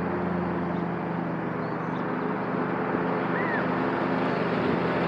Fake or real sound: real